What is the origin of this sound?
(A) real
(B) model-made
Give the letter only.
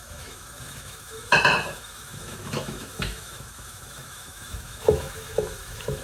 B